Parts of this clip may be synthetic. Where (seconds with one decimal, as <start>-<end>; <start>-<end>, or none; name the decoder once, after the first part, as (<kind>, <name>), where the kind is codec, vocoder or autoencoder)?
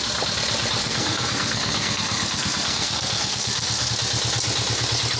0.8-3.9 (codec, SNAC)